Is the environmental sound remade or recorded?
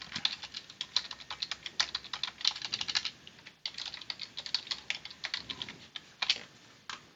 recorded